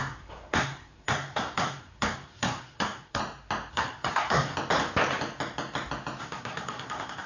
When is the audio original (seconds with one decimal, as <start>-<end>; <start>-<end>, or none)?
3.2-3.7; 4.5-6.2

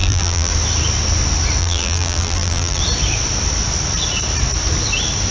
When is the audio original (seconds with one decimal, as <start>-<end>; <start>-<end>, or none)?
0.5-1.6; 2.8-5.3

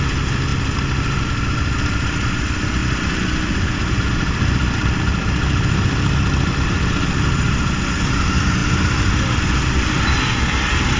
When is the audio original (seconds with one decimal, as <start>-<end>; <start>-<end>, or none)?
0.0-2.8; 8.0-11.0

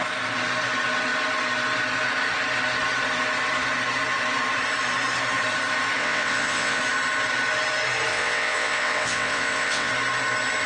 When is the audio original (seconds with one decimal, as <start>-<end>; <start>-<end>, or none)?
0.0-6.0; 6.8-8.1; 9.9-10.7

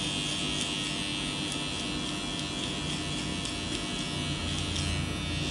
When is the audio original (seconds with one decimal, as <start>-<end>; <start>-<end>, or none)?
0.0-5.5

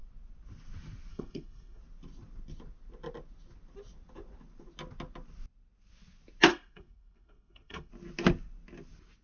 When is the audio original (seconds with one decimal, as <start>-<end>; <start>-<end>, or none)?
0.0-1.1; 1.8-6.5; 7.9-9.2